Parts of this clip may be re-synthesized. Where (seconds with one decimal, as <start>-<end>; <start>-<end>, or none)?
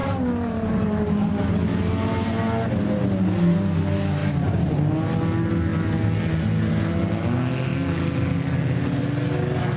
0.0-1.3; 4.2-4.7